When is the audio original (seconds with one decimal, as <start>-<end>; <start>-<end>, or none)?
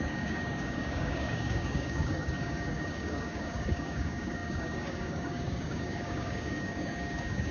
none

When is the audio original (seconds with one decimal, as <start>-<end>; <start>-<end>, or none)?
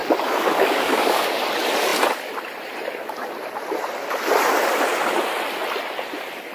1.4-6.5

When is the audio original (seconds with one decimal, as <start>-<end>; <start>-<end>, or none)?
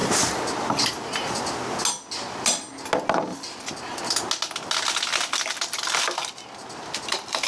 0.0-7.5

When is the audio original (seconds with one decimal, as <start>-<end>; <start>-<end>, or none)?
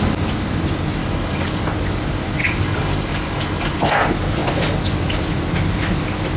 0.0-1.0; 1.6-2.4; 3.8-6.4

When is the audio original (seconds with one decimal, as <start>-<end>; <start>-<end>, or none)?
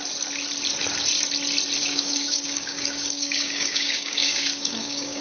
0.0-1.8